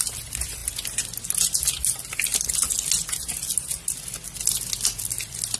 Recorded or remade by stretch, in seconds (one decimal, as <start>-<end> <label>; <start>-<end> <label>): 0.0-5.6 recorded